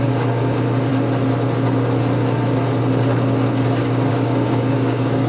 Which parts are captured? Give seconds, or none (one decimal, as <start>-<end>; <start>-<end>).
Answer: 0.9-4.1